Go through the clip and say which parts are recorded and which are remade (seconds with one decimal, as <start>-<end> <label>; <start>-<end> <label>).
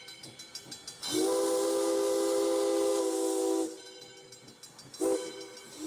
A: 0.0-5.9 recorded